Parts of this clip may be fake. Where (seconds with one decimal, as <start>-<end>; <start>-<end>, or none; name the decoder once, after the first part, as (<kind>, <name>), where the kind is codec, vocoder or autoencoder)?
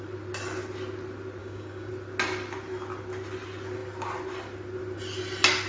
1.4-1.9 (codec, DAC)